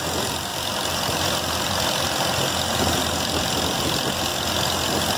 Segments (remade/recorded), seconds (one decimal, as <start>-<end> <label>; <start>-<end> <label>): 0.0-0.5 recorded; 0.5-2.4 remade; 2.4-5.2 recorded